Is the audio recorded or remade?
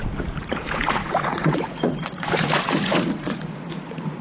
remade